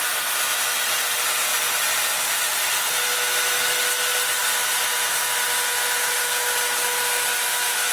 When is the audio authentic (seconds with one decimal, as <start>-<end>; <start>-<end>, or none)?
0.0-7.9